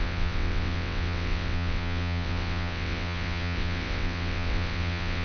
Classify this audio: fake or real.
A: fake